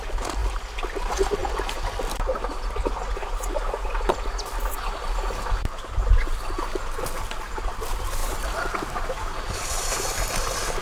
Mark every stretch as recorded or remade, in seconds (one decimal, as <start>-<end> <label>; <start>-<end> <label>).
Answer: 0.0-10.8 recorded